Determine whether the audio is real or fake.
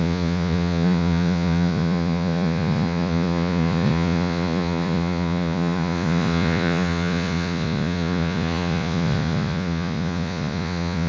fake